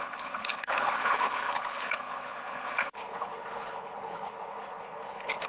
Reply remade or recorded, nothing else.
remade